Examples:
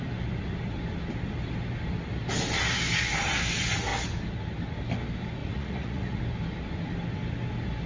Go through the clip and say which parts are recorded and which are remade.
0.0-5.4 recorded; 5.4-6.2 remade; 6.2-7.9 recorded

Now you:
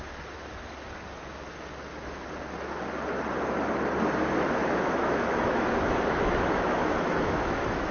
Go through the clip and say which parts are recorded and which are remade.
0.0-4.6 recorded; 4.6-7.9 remade

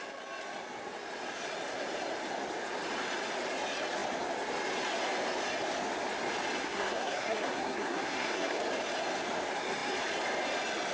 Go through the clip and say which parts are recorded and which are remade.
0.0-6.6 recorded; 6.6-8.6 remade; 8.6-10.9 recorded

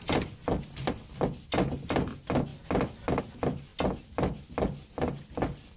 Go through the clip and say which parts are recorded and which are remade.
0.0-5.8 recorded

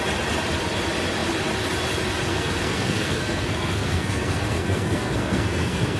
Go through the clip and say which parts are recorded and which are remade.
0.0-2.3 recorded; 2.3-6.0 remade